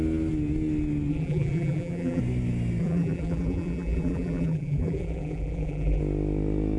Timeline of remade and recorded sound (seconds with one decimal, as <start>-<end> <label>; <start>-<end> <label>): 0.0-1.1 recorded; 1.1-2.2 remade; 2.2-2.8 recorded; 2.8-6.0 remade; 6.0-6.8 recorded